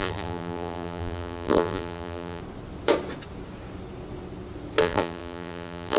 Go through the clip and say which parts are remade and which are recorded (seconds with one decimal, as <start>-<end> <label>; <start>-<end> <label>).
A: 0.0-2.4 remade; 2.4-4.8 recorded; 4.8-6.0 remade